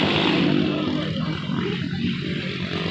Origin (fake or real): real